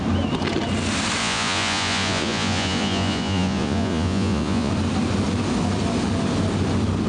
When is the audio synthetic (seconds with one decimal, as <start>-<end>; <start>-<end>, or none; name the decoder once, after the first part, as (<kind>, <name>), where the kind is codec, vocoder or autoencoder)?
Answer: 1.2-4.7 (vocoder, Vocos)